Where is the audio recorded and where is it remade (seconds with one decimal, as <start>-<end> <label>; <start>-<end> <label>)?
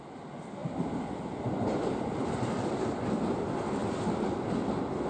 0.0-5.1 recorded